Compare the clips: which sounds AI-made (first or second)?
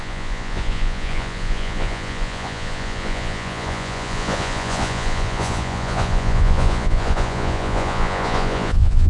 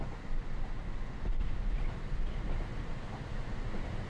first